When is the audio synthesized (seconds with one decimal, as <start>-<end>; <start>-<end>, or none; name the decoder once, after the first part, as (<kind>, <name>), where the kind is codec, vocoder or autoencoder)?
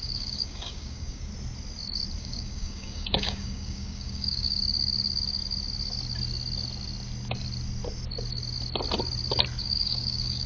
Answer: 0.0-1.3 (codec, DAC); 2.2-4.6; 9.6-10.5